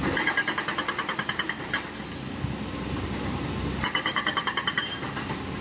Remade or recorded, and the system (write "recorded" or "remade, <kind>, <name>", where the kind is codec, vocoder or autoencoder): recorded